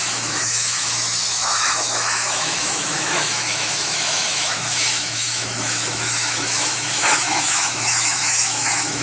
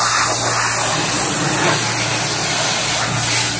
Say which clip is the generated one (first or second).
first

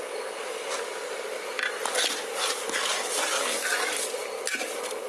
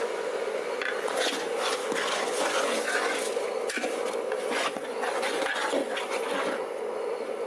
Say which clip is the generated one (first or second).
second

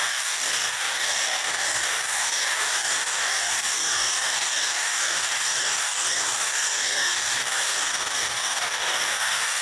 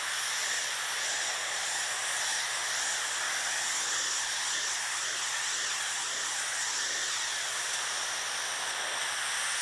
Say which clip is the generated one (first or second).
first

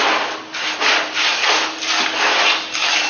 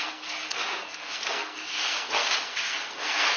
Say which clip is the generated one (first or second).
second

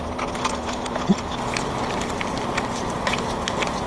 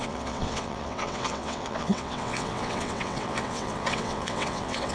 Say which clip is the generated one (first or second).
second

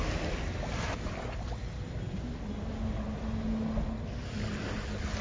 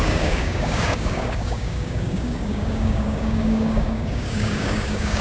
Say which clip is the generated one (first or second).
second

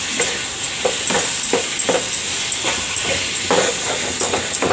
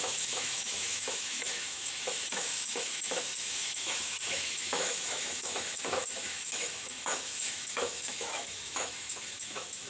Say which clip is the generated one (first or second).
second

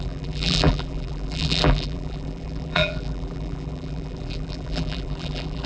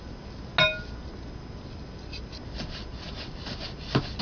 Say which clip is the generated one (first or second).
first